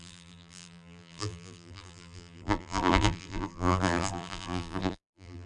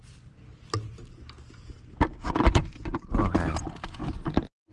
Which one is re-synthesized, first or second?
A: first